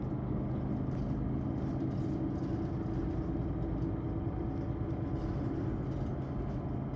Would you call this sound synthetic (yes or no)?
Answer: no